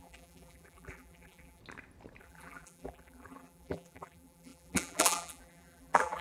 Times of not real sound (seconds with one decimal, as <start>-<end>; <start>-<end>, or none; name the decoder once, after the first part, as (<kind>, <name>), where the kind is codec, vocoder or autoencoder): 0.0-1.6 (vocoder, BigVGAN v2); 2.2-6.2